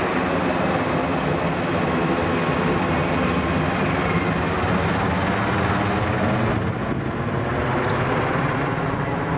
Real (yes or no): yes